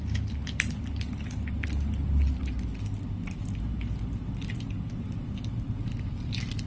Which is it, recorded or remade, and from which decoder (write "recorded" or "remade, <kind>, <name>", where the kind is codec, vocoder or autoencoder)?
recorded